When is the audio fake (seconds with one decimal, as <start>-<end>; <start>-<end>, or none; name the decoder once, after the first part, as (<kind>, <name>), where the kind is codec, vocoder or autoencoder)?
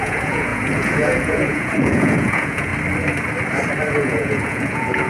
0.0-2.7 (vocoder, Vocos); 3.9-5.1